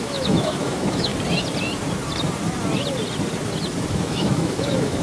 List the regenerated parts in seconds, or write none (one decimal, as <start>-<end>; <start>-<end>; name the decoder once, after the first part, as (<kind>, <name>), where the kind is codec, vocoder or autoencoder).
0.0-1.1 (autoencoder, DAC-VAE); 3.9-5.0